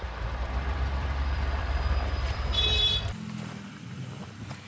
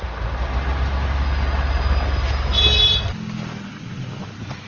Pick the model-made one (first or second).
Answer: first